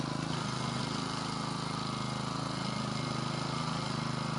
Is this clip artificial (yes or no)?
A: no